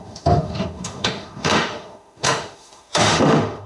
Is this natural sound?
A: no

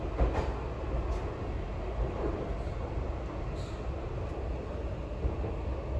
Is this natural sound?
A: yes